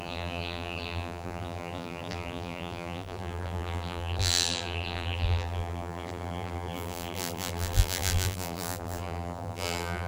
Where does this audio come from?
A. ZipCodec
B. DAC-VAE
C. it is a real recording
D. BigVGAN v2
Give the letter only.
D